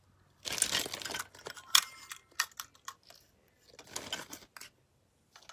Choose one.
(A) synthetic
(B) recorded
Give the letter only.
B